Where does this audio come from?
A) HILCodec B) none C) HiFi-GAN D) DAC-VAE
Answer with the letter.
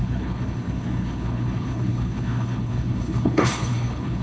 A